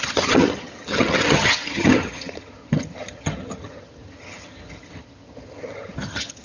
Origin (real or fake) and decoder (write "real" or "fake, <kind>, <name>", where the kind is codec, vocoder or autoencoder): fake, vocoder, HiFi-GAN